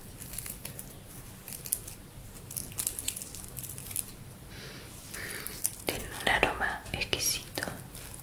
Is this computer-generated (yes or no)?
no